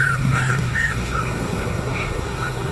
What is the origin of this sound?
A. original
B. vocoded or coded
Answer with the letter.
B